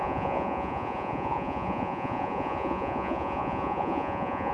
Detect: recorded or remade remade